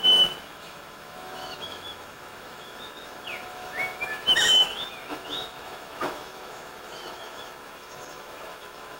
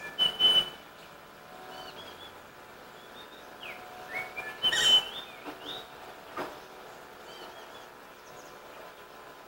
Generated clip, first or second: first